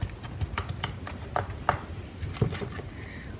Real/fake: real